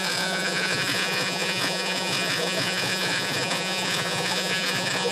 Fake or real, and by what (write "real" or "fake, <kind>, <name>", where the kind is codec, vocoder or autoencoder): fake, vocoder, Vocos